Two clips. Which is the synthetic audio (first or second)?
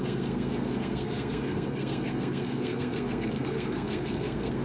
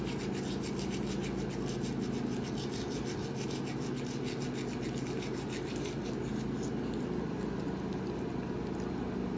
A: first